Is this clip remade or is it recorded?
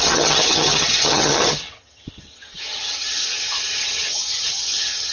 remade